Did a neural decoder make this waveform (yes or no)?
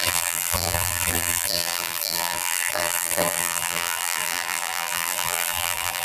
yes